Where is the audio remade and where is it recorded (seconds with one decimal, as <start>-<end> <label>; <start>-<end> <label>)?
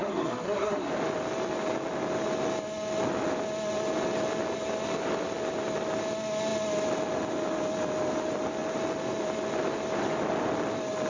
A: 0.0-0.9 remade; 0.9-11.1 recorded